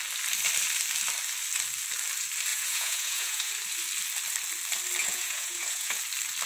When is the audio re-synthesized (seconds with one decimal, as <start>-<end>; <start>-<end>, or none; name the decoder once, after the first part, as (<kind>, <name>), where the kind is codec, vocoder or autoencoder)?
2.5-3.5 (vocoder, Vocos); 5.0-6.0